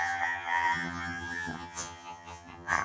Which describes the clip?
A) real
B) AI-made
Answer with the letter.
B